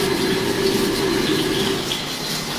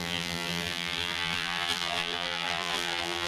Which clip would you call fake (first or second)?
second